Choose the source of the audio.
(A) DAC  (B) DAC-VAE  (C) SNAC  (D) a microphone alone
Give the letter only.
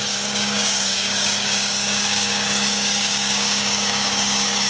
A